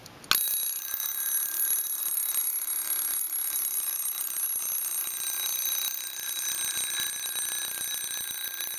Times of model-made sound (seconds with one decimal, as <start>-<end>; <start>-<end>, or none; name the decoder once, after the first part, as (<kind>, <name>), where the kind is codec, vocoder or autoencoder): 2.0-2.4 (vocoder, BigVGAN v2); 3.2-8.8